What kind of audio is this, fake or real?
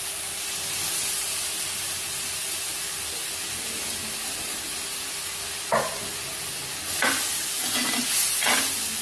real